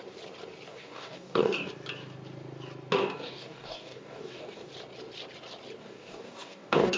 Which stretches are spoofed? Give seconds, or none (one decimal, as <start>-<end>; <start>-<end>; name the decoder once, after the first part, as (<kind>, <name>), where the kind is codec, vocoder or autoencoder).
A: 0.7-1.7 (codec, DAC); 3.0-4.7; 5.8-7.0